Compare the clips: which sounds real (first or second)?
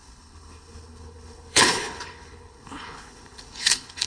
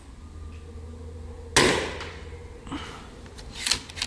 second